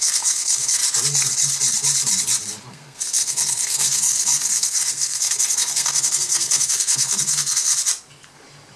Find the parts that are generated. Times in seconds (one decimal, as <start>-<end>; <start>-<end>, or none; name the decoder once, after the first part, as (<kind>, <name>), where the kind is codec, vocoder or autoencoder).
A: 0.0-0.8 (codec, SNAC); 2.7-7.7